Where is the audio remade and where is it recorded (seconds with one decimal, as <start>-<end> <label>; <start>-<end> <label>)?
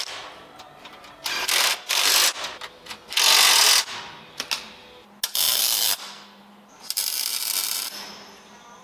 0.0-1.4 recorded; 1.4-2.1 remade; 2.1-5.6 recorded; 5.6-6.4 remade; 6.4-8.8 recorded